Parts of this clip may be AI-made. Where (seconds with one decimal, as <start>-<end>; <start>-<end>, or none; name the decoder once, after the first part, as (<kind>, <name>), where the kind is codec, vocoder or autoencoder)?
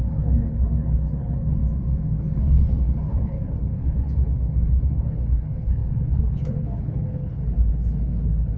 0.0-1.6 (codec, HILCodec); 2.4-8.6